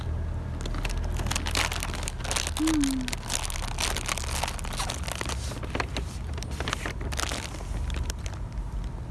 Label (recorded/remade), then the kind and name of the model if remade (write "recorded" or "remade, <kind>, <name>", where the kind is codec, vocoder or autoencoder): recorded